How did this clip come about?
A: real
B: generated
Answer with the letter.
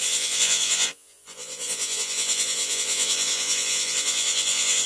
B